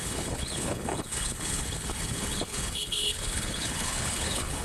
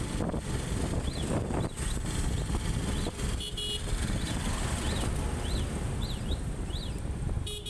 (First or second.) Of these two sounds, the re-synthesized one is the first